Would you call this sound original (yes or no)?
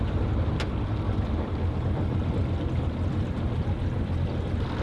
yes